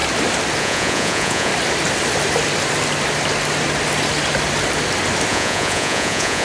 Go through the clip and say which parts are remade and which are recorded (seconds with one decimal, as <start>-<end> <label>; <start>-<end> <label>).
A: 0.0-0.6 recorded; 0.6-1.5 remade; 1.5-5.3 recorded; 5.3-6.4 remade